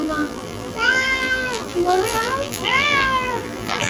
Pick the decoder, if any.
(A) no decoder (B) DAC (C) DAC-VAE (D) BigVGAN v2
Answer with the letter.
D